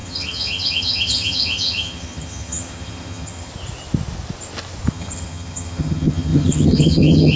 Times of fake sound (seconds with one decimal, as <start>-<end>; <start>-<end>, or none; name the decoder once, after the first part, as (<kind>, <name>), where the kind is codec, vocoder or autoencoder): 0.0-3.5 (vocoder, HiFi-GAN); 4.9-7.4